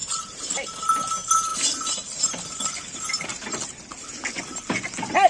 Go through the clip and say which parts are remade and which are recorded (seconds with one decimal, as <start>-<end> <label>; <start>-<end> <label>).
0.0-1.0 remade; 1.0-5.3 recorded